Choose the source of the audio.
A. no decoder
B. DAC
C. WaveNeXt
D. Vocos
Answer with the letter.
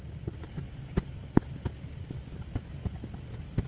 A